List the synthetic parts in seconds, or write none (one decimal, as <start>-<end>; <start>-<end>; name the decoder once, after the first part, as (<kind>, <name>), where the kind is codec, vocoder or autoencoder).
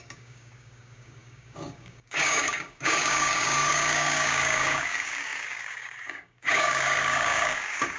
0.0-8.0 (codec, DAC)